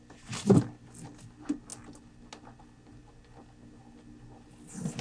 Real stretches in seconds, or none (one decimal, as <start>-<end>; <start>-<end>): 0.0-5.0